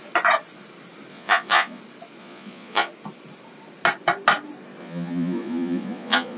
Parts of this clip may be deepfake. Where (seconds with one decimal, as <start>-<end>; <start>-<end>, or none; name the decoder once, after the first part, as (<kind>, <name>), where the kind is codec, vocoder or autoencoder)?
1.1-1.8 (vocoder, Vocos); 2.2-2.9; 4.8-6.4